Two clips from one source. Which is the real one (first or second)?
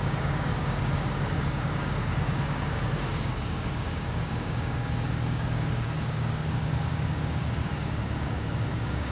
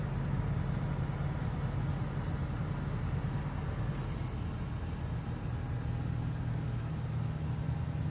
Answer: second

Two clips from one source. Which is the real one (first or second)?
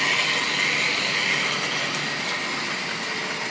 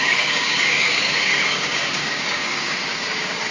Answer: first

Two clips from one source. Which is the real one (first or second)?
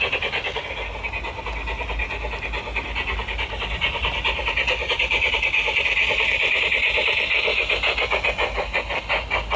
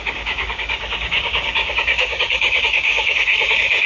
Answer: first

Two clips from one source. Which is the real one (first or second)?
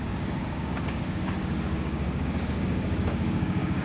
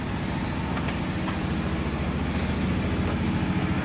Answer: second